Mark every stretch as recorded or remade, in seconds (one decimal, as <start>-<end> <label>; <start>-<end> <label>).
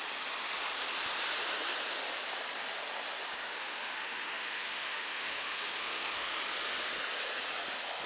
0.0-3.4 recorded; 3.4-6.4 remade; 6.4-8.1 recorded